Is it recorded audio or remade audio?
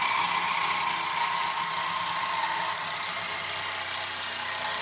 recorded